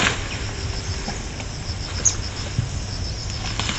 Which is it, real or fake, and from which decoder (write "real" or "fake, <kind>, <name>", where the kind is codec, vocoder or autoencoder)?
real